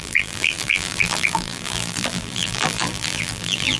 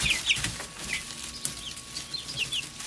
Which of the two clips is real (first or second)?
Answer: second